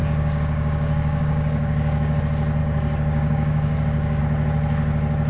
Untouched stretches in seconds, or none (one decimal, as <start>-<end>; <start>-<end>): 2.2-2.6; 4.2-5.3